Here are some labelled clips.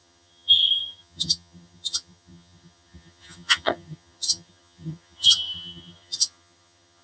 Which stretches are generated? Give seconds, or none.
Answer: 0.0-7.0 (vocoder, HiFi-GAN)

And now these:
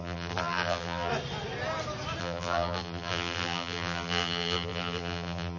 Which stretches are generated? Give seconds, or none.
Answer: 0.0-1.1 (vocoder, BigVGAN v2); 2.2-5.6

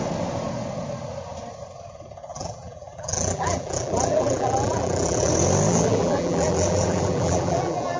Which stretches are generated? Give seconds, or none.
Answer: 2.3-5.3 (vocoder, BigVGAN v2); 5.7-8.0